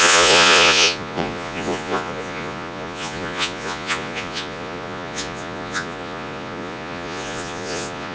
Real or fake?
fake